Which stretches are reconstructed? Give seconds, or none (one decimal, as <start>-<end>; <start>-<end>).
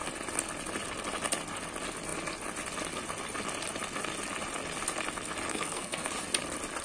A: 5.5-6.1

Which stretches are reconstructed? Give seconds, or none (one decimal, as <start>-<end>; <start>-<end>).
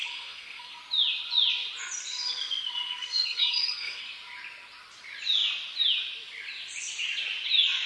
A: 0.0-0.8; 2.0-4.0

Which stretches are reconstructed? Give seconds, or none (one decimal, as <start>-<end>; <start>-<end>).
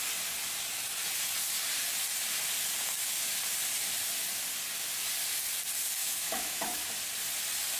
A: 6.0-6.9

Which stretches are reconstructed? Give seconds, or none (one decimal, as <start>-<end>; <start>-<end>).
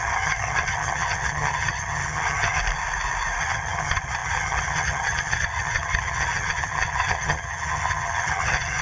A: 0.0-2.6; 3.4-8.8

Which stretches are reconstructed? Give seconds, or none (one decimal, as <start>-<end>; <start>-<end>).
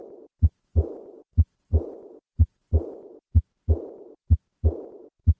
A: none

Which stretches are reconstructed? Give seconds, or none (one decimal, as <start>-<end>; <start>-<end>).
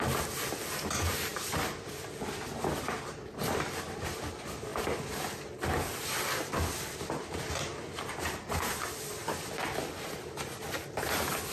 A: 8.5-9.2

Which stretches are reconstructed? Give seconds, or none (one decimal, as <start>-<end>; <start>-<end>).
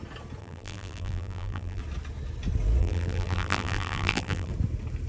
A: 0.4-1.8; 2.8-4.5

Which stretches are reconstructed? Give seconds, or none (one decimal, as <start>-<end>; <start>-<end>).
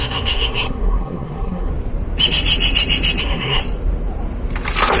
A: 0.0-1.7; 3.2-3.6